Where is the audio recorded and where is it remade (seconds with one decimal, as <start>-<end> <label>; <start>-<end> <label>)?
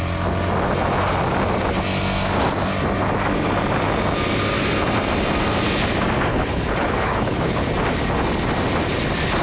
0.0-6.3 recorded; 6.3-7.6 remade; 7.6-9.4 recorded